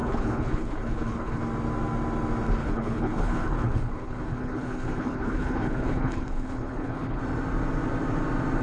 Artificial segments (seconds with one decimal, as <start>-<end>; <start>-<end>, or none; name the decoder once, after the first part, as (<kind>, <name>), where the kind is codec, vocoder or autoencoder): 0.0-1.4 (codec, HILCodec); 2.6-7.2